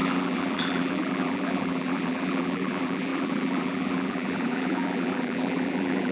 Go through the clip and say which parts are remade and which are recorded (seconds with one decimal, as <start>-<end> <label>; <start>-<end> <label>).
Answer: 0.0-6.1 remade